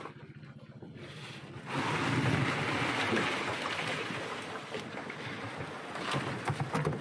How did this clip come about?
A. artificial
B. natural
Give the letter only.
B